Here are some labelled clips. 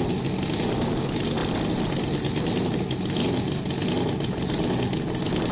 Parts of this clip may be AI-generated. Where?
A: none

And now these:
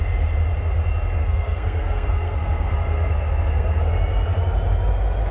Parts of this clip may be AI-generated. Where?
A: 1.2-3.8 (codec, SNAC)